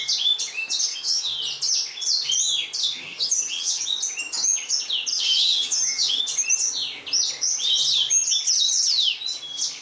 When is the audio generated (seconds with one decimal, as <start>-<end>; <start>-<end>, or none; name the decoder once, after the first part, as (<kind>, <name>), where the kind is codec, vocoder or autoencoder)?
0.9-1.4 (vocoder, HiFi-GAN); 2.8-3.8; 5.1-6.2